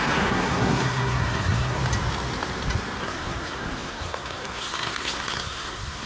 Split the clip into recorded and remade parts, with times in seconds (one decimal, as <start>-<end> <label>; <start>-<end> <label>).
0.0-1.8 remade; 1.8-3.0 recorded; 3.0-6.1 remade